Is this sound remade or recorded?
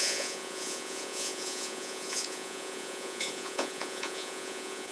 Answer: remade